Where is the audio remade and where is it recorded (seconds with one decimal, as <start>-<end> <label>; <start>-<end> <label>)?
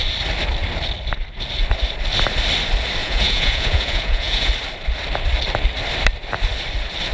0.0-3.0 recorded; 3.0-4.5 remade; 4.5-7.1 recorded